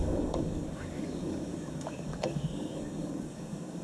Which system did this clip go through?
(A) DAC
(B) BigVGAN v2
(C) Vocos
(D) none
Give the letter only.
A